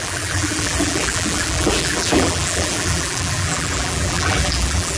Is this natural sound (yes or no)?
no